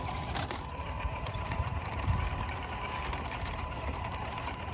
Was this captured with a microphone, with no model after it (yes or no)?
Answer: no